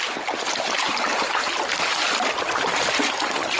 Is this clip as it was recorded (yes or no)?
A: yes